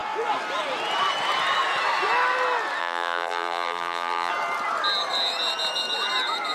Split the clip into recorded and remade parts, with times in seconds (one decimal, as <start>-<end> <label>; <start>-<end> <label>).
0.0-2.8 recorded; 2.8-4.3 remade; 4.3-6.5 recorded